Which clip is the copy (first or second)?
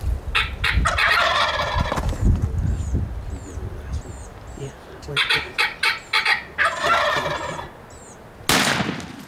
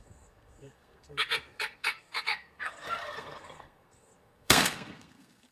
second